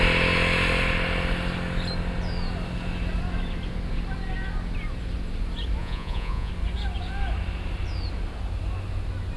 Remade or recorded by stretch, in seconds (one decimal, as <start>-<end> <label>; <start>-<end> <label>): 0.0-5.8 recorded; 5.8-6.5 remade; 6.5-9.4 recorded